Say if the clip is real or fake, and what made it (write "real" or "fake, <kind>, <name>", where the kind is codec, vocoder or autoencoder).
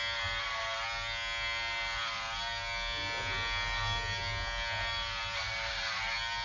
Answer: real